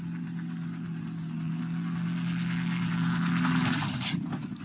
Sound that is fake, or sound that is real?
real